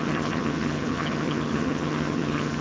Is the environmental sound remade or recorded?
remade